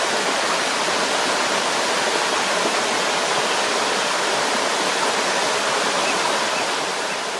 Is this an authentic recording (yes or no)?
yes